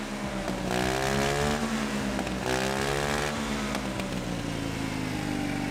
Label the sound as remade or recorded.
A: recorded